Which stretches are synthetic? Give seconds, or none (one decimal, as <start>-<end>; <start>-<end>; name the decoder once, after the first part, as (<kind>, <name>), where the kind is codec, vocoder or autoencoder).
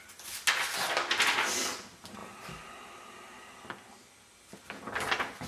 none